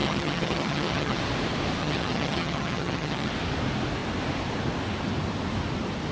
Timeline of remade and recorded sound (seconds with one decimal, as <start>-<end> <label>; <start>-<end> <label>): 0.0-1.2 remade; 1.2-1.8 recorded; 1.8-3.3 remade; 3.3-6.1 recorded